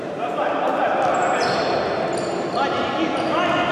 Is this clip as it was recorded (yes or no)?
yes